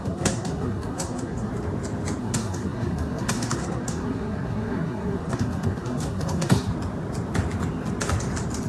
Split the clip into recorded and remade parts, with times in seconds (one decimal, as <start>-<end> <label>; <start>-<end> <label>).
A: 0.0-1.5 remade; 1.5-2.2 recorded; 2.2-6.7 remade; 6.7-8.7 recorded